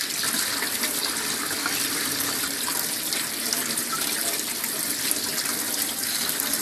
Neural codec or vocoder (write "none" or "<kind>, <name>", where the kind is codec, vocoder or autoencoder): none